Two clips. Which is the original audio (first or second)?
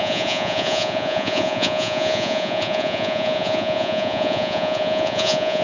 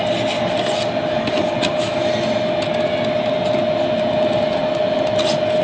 second